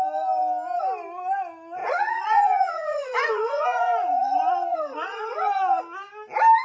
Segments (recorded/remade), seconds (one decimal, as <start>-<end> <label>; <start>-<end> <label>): 0.0-1.8 recorded; 1.8-5.8 remade; 5.8-6.6 recorded